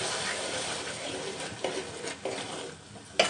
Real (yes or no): yes